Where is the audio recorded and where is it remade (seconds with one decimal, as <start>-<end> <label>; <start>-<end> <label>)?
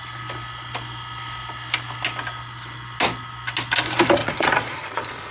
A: 0.0-4.2 recorded; 4.2-5.3 remade